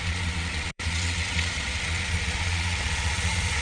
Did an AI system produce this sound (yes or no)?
yes